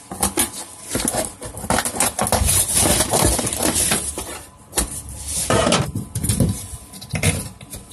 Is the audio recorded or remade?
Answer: recorded